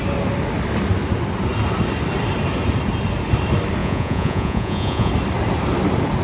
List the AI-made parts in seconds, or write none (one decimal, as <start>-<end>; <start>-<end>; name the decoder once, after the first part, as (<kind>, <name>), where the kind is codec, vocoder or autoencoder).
3.8-5.1 (vocoder, Vocos)